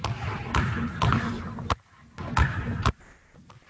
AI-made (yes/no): no